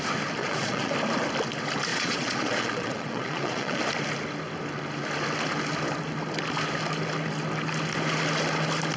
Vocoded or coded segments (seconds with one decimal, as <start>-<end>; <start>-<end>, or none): 0.4-0.9; 1.9-3.8